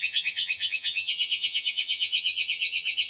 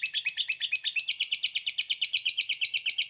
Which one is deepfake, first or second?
first